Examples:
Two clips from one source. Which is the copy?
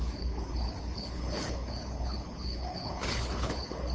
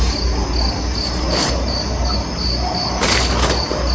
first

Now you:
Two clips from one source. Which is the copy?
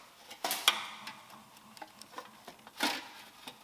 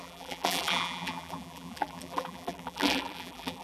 second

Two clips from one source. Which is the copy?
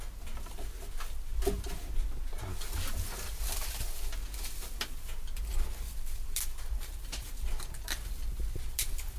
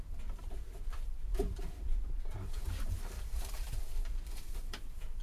second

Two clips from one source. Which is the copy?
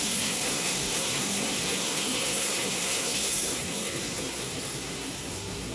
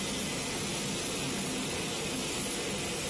first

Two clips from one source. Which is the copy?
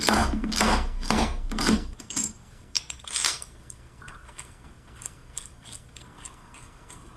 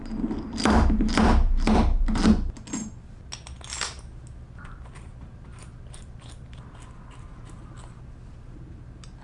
first